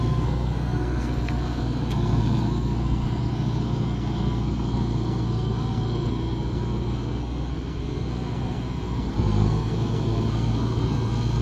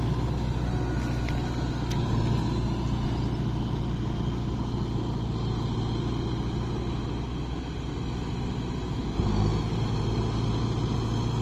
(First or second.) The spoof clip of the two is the first